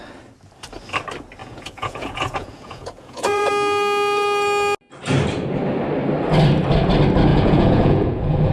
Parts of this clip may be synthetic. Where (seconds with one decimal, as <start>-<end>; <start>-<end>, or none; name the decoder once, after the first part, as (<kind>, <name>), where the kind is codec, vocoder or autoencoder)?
1.4-3.5 (vocoder, Vocos); 7.3-8.5